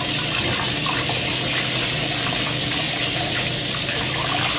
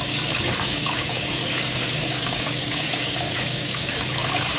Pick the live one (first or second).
first